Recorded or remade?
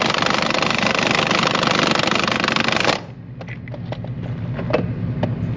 recorded